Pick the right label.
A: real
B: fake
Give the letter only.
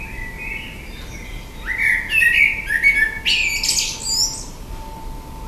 A